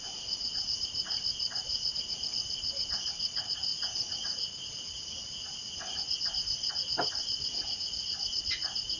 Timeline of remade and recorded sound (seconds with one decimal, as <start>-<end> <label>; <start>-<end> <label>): 0.0-9.0 recorded